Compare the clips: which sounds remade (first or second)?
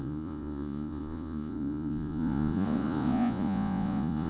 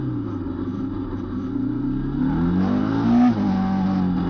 first